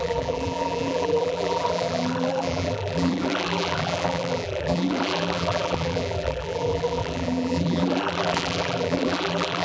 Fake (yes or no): yes